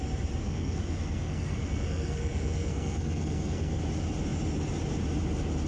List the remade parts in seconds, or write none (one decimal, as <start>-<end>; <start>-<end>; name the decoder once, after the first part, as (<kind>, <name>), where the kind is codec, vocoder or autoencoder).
0.4-3.8 (codec, SNAC)